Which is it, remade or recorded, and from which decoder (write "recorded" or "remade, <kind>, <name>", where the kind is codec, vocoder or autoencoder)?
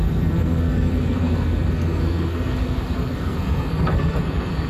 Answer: remade, codec, SNAC